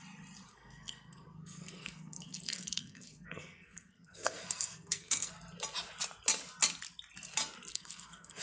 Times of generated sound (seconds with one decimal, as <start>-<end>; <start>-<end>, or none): 0.5-5.3; 7.7-8.4